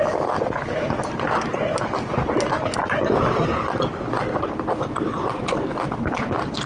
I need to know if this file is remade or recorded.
recorded